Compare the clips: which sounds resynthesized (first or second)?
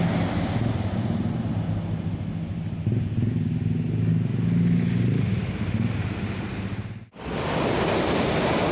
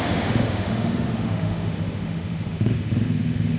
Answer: second